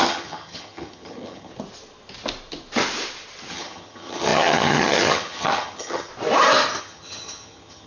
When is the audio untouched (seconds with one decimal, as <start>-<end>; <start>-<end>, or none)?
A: 1.5-3.5; 6.1-6.8